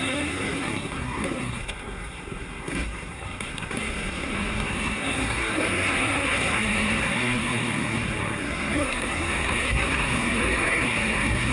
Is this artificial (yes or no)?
yes